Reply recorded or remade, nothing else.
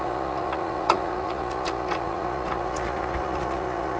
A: remade